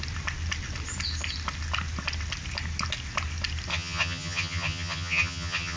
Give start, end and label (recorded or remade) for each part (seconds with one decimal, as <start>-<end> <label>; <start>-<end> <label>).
0.0-3.7 recorded; 3.7-5.8 remade